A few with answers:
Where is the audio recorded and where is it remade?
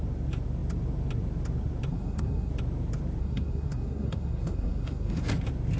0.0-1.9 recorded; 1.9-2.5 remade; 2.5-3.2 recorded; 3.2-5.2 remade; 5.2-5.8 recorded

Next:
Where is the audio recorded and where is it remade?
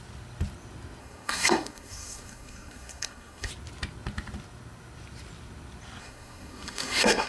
0.0-1.0 recorded; 1.0-3.5 remade; 3.5-6.0 recorded; 6.0-7.3 remade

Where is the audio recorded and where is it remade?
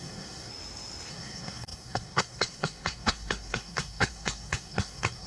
0.0-0.5 remade; 0.5-1.1 recorded; 1.1-5.3 remade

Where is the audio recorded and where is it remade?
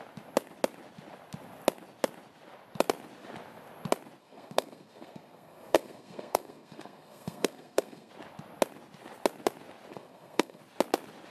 0.0-4.2 recorded; 4.2-8.1 remade; 8.1-9.9 recorded; 9.9-10.6 remade; 10.6-11.3 recorded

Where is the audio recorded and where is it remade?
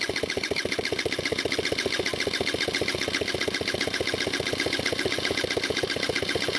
0.0-6.6 recorded